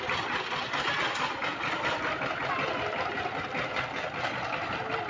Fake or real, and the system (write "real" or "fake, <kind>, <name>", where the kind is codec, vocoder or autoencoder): real